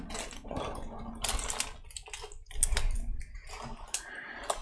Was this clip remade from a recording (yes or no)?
no